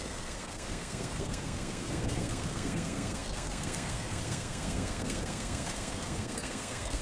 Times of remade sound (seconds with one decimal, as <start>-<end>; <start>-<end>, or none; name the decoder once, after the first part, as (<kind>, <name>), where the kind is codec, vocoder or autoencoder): 0.0-7.0 (codec, SNAC)